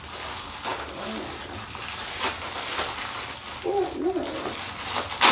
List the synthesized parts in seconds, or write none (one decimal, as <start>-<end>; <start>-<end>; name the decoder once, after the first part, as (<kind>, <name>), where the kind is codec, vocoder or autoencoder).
none